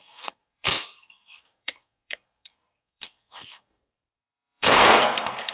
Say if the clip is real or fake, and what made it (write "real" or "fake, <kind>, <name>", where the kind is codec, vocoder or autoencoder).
fake, codec, SNAC